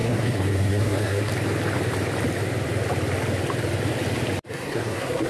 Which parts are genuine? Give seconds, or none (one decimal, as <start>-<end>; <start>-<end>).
1.3-4.5

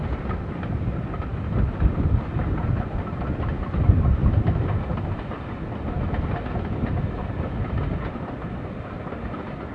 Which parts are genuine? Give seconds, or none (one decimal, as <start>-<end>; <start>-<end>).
0.0-4.2; 5.5-9.7

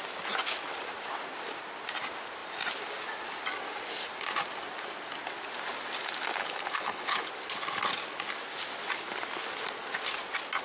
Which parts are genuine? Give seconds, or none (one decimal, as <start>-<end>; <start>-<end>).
0.0-6.4; 7.3-10.6

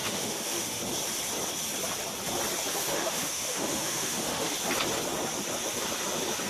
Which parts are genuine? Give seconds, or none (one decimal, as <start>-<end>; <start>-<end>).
0.8-2.7; 4.5-6.5

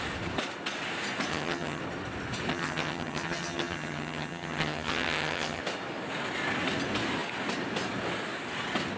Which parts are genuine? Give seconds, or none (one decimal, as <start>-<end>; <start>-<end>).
0.0-1.3; 1.8-2.5; 5.6-9.0

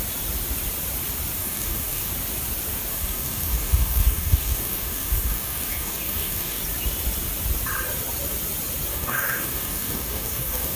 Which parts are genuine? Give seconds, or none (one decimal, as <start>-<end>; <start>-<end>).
0.0-1.4; 2.1-2.9; 6.6-8.9

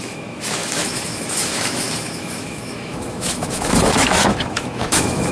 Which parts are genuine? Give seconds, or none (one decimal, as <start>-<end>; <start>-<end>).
none